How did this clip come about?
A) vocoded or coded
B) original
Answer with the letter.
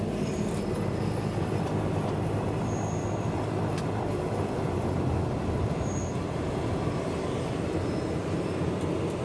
A